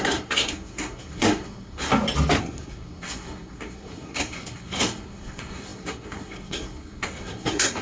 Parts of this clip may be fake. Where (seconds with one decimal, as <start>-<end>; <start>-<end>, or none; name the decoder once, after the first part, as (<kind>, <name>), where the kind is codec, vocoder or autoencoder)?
0.0-1.9 (codec, SNAC); 2.4-7.8